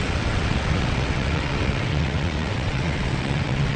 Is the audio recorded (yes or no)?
no